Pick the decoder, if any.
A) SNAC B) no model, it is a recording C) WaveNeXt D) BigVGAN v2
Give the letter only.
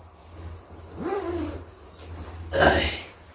B